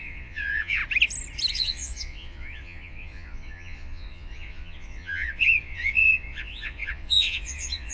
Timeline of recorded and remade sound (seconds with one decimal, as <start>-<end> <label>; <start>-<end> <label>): 0.0-0.8 remade; 0.8-1.5 recorded; 1.5-7.9 remade

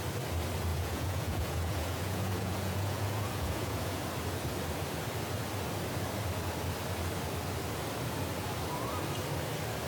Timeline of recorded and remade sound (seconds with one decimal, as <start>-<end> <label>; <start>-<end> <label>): 0.0-0.7 recorded; 0.7-4.0 remade; 4.0-9.9 recorded